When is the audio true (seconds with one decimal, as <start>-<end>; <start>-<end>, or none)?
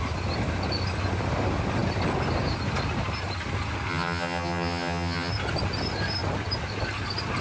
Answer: 0.0-3.9; 5.3-7.4